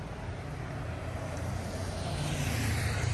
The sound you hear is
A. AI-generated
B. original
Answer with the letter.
A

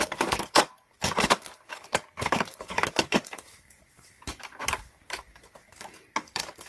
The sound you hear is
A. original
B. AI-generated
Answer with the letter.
B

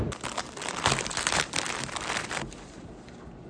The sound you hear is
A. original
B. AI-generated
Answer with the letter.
A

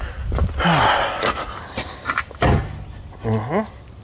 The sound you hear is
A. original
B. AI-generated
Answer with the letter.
A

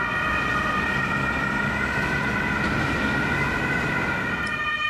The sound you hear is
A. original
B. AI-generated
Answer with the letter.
A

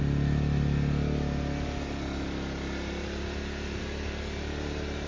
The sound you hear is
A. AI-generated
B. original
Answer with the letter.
B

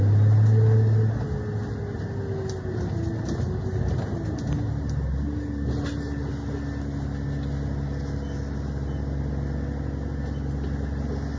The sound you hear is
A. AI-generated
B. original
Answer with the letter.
B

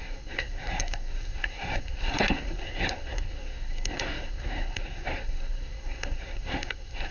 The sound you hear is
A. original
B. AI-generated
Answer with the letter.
B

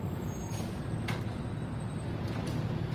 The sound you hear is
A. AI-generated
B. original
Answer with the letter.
B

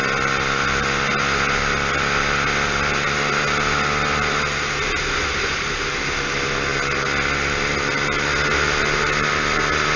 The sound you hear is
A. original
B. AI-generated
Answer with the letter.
A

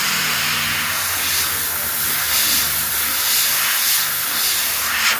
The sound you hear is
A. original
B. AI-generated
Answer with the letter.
A